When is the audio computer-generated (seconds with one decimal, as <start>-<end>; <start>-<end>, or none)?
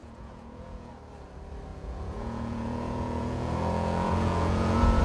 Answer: 0.0-0.9; 1.7-5.0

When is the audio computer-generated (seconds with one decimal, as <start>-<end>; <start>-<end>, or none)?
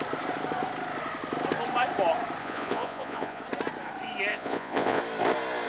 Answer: 2.4-3.4; 4.3-5.0